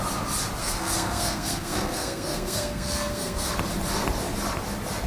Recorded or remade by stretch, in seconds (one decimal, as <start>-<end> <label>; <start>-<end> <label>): 0.0-0.6 recorded; 0.6-3.5 remade; 3.5-5.1 recorded